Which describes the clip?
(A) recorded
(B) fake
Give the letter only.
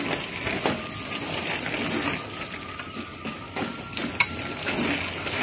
A